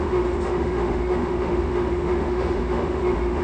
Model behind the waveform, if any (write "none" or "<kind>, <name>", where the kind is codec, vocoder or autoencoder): autoencoder, DAC-VAE